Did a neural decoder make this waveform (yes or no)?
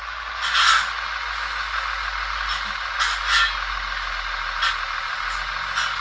no